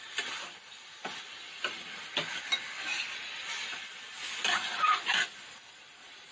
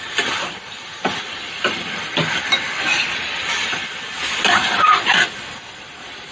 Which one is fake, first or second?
second